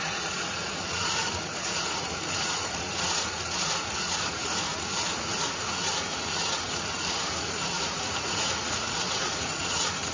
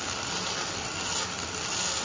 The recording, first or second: second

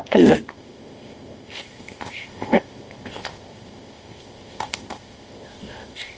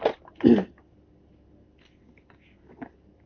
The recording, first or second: second